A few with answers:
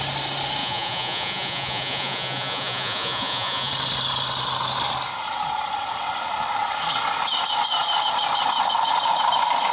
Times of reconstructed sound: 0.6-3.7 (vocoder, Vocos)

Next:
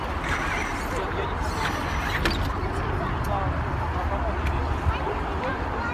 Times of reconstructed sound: none

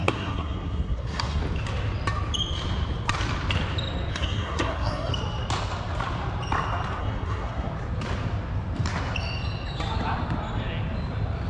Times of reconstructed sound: 0.0-1.4 (codec, SNAC); 4.1-5.1; 7.0-7.7

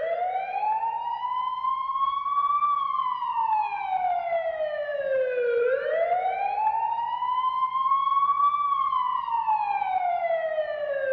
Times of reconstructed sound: none